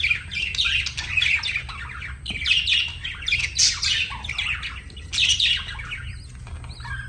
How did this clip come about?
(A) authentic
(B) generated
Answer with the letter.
A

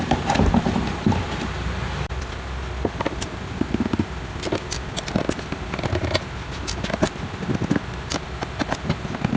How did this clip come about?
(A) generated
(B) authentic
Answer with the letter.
B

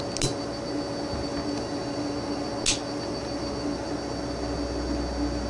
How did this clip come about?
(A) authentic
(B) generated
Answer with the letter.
A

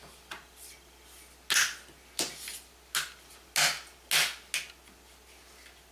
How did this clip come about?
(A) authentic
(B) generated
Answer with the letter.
A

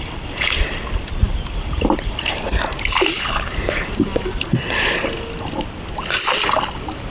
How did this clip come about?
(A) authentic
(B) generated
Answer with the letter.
A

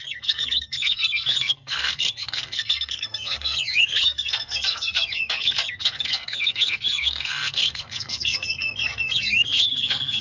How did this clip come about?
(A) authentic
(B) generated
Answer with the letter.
B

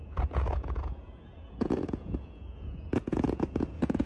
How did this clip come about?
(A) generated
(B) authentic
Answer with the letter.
A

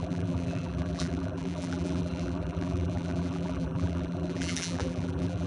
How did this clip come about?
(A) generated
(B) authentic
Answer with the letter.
A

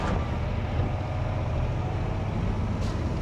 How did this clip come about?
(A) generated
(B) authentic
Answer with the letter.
B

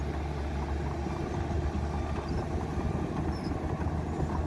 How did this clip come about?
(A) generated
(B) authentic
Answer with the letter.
B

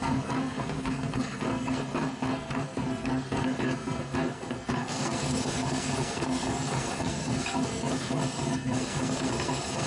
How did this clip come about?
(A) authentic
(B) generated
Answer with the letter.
B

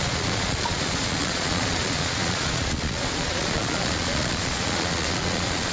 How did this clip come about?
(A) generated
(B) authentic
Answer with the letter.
A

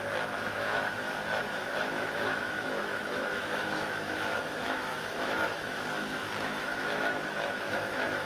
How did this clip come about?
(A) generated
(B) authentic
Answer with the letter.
A